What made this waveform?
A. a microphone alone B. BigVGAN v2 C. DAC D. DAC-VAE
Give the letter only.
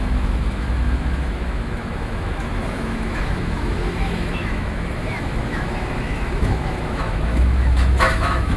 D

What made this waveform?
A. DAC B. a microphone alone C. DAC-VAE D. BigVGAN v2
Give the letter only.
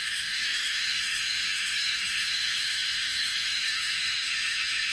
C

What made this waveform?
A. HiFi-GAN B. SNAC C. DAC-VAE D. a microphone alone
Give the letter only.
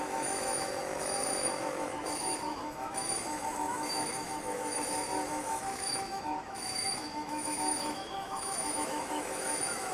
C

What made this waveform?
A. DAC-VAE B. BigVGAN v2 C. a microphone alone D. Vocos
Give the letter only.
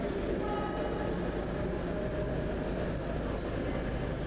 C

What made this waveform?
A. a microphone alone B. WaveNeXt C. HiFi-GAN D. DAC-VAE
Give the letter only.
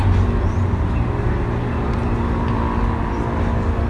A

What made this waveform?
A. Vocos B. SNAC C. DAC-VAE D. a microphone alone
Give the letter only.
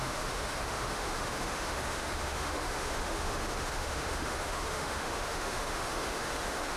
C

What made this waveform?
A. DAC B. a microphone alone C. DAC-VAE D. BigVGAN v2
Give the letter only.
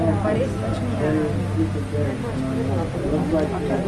B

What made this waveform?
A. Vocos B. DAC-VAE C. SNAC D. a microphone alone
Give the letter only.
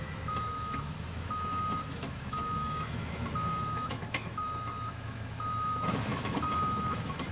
B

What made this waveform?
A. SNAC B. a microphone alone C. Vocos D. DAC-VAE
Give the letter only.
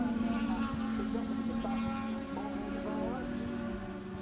B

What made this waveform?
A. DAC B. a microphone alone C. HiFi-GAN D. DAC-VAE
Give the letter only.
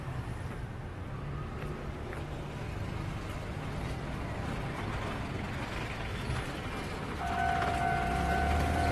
B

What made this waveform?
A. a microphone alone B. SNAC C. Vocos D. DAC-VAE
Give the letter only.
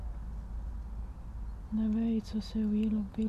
A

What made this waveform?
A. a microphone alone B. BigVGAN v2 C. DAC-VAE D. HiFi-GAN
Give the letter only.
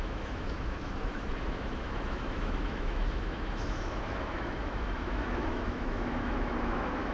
C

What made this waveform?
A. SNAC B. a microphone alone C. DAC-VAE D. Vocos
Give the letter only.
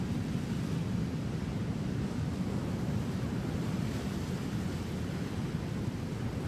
B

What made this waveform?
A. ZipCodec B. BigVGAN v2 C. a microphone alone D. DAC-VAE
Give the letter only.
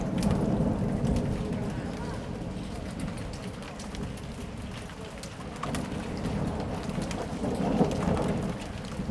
C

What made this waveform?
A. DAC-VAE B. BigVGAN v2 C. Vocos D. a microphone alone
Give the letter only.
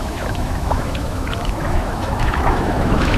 A